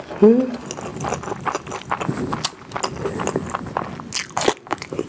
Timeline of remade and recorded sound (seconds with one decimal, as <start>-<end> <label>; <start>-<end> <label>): 0.0-5.1 recorded